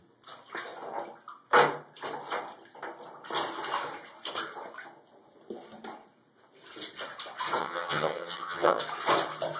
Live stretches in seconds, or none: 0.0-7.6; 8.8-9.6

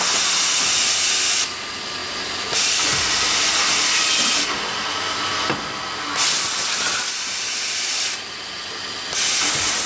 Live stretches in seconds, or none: 0.0-9.9